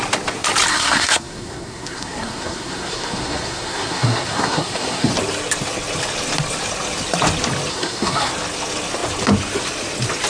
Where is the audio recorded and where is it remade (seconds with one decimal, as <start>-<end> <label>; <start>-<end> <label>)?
0.0-0.7 recorded; 0.7-5.1 remade; 5.1-7.7 recorded; 7.7-8.3 remade; 8.3-10.3 recorded